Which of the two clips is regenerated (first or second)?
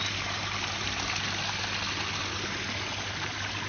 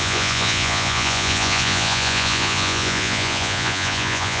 second